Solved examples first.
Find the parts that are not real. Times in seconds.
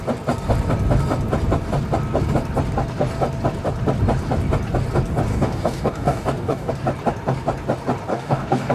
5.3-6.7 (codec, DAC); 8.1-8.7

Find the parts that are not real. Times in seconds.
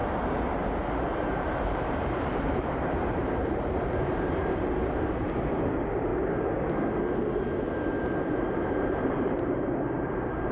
1.3-6.1 (vocoder, BigVGAN v2); 8.3-10.5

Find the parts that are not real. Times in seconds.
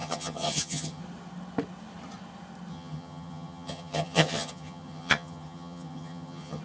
0.0-1.0 (vocoder, HiFi-GAN); 2.7-6.6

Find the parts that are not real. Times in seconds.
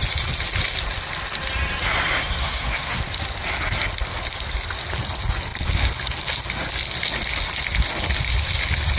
2.4-3.0 (codec, SNAC)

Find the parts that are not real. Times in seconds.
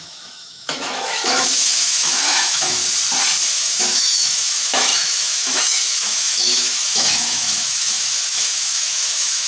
0.0-2.8 (autoencoder, DAC-VAE); 3.5-9.5